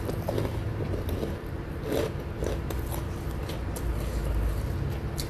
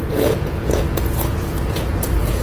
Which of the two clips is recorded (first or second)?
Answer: first